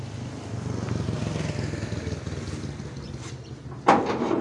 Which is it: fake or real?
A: real